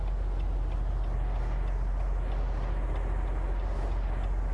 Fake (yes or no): no